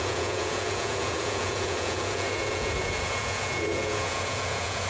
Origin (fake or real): fake